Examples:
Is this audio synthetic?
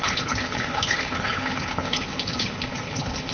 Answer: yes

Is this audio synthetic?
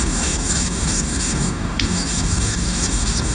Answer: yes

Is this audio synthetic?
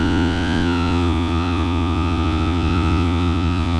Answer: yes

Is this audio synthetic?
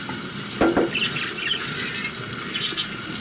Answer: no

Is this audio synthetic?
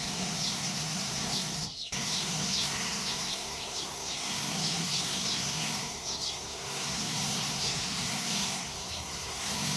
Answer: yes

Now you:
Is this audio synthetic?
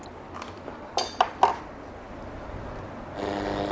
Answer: no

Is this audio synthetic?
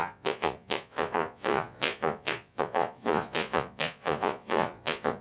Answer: yes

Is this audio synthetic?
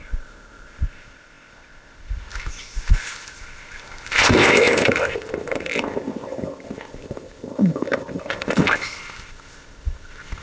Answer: yes